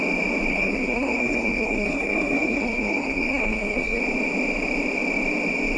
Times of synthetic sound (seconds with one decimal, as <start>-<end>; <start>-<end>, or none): 0.5-4.0